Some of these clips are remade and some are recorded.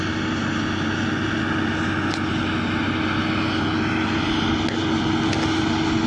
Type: recorded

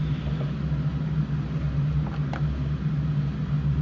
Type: recorded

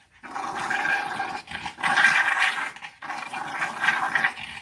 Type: recorded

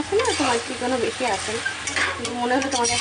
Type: recorded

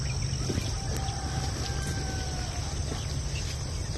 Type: recorded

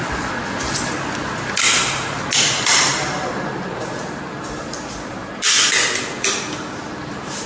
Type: recorded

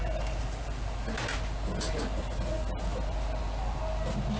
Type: recorded